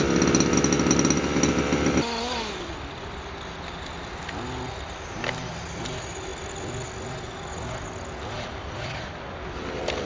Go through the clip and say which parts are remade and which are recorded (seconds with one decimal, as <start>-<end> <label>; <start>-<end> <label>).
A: 0.0-10.1 recorded